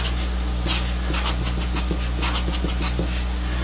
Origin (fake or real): real